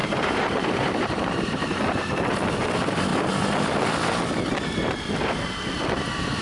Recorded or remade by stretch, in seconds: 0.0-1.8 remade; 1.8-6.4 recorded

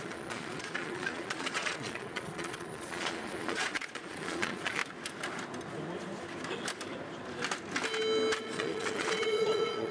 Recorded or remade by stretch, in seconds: 0.0-4.8 remade; 4.8-8.4 recorded; 8.4-9.9 remade

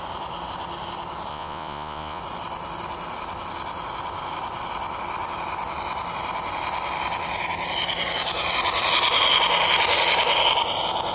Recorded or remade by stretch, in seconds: 0.0-1.3 recorded; 1.3-2.2 remade; 2.2-11.1 recorded

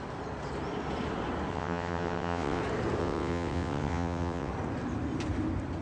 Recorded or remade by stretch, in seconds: 0.0-1.5 recorded; 1.5-2.6 remade; 2.6-3.0 recorded; 3.0-4.5 remade; 4.5-5.8 recorded

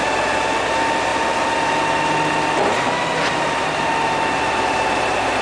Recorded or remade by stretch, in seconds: 0.0-5.4 recorded

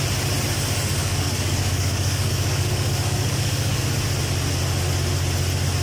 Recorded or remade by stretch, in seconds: 0.0-1.0 recorded; 1.0-3.8 remade; 3.8-5.8 recorded